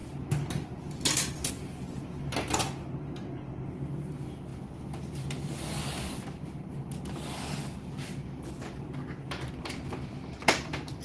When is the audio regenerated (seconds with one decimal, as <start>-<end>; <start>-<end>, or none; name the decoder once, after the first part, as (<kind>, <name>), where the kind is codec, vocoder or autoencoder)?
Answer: none